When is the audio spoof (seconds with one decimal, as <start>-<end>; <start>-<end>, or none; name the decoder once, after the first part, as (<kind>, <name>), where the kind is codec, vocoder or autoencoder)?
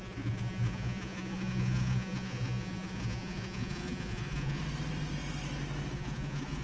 0.0-4.6 (vocoder, Vocos); 5.9-6.6